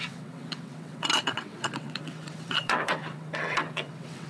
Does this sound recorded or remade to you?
remade